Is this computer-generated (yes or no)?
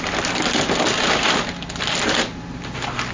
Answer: no